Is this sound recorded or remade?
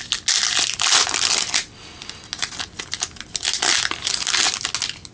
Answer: recorded